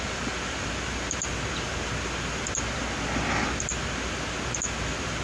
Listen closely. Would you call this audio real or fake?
real